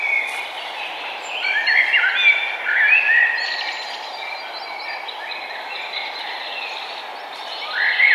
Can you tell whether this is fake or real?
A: real